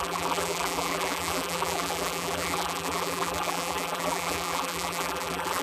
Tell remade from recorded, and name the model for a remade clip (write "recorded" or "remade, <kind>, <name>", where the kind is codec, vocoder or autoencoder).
remade, vocoder, BigVGAN v2